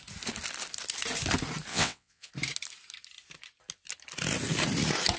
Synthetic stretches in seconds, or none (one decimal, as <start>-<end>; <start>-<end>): 1.7-2.3